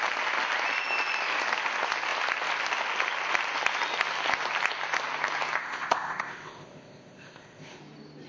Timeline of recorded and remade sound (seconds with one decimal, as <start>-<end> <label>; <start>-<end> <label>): 0.0-5.6 recorded; 5.6-7.8 remade; 7.8-8.3 recorded